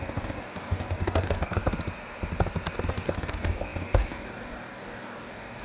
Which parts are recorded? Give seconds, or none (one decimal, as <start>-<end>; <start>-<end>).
1.6-2.9